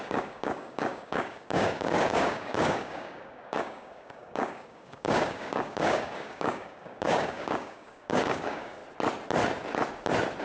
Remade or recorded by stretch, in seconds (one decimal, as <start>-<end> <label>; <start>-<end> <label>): 0.0-8.8 remade; 8.8-10.4 recorded